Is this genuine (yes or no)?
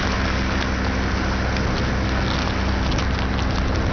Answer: yes